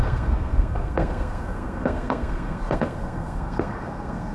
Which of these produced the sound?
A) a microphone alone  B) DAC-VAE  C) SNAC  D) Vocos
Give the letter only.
C